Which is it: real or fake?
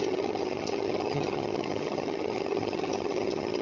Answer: fake